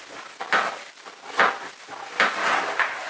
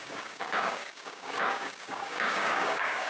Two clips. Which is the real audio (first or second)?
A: first